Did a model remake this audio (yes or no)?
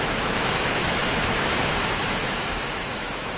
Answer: yes